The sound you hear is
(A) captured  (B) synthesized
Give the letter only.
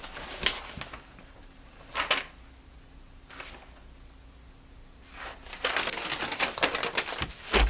A